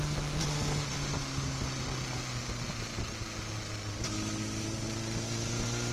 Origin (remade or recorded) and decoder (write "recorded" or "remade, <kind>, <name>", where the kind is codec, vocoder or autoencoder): recorded